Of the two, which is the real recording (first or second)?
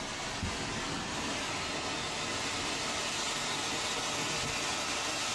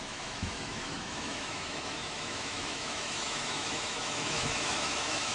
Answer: first